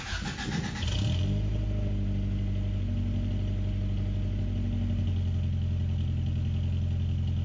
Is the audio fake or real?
real